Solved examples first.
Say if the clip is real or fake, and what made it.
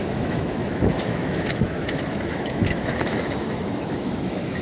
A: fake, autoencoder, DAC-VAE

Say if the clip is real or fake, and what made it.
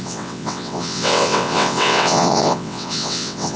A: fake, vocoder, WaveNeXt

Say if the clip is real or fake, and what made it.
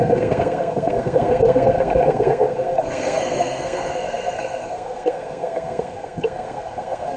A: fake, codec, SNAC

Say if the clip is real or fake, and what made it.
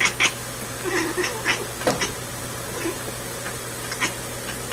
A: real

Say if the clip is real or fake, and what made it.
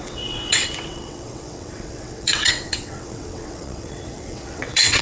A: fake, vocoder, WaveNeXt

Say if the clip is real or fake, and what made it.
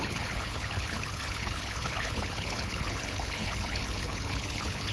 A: fake, codec, HILCodec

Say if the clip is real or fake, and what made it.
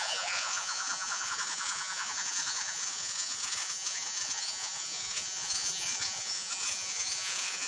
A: fake, vocoder, Vocos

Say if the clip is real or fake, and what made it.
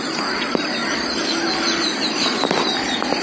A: fake, vocoder, BigVGAN v2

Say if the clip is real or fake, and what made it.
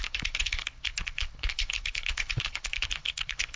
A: fake, codec, HILCodec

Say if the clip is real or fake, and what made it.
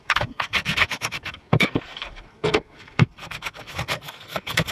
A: fake, codec, SNAC